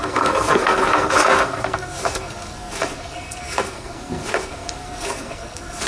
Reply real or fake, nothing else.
fake